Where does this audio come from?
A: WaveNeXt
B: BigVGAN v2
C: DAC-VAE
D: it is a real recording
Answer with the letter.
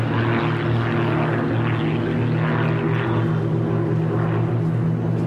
D